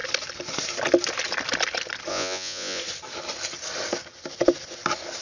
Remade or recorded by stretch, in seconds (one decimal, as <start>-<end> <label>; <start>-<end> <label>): 0.0-2.1 recorded; 2.1-2.8 remade; 2.8-5.2 recorded